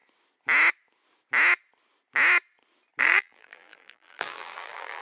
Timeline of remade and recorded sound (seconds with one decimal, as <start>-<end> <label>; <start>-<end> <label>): 0.0-3.0 recorded; 3.0-5.0 remade

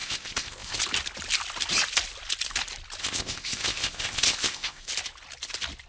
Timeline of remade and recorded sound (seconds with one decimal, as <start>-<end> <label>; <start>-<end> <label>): 0.0-0.8 remade; 0.8-3.0 recorded; 3.0-4.9 remade; 4.9-5.9 recorded

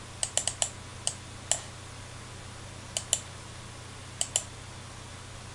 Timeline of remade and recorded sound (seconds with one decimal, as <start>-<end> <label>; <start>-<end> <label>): 0.0-5.5 recorded